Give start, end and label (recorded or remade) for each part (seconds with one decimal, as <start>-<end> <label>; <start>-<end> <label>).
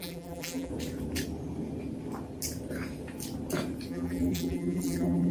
0.0-0.7 remade; 0.7-3.9 recorded; 3.9-5.3 remade